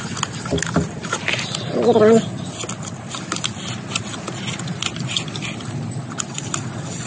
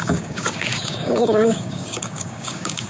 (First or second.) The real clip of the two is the first